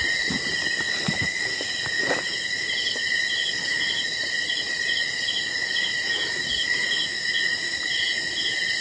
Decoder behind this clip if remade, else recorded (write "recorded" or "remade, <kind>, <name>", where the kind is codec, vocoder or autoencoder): recorded